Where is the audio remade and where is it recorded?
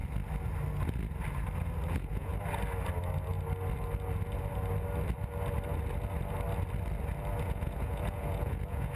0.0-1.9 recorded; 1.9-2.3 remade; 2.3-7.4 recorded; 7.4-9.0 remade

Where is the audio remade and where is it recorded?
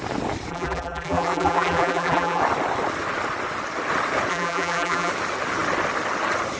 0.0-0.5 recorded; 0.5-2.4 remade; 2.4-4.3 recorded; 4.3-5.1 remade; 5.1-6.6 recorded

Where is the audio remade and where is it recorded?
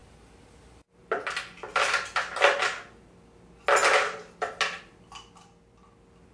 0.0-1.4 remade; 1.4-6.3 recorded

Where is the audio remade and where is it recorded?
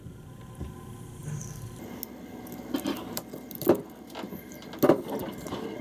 0.0-5.8 recorded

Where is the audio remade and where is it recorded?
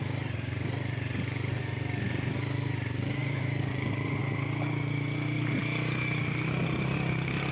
0.0-3.2 recorded; 3.2-3.7 remade; 3.7-7.5 recorded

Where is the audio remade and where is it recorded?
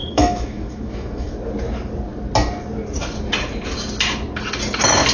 0.0-1.3 remade; 1.3-5.1 recorded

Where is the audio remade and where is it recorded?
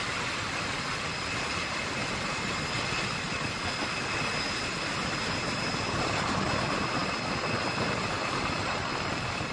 0.0-9.5 recorded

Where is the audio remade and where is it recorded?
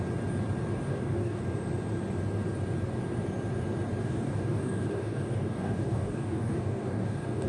0.0-0.9 recorded; 0.9-1.4 remade; 1.4-4.0 recorded; 4.0-7.5 remade